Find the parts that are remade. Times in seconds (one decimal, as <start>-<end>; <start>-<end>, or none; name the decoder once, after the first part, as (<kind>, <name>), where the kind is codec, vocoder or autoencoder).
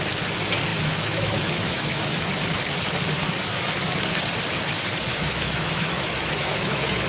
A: 0.7-2.3 (autoencoder, DAC-VAE); 5.1-7.1